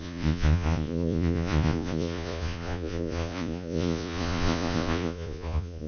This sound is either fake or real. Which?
fake